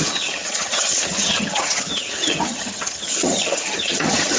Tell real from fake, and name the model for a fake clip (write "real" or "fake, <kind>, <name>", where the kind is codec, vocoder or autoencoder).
fake, vocoder, HiFi-GAN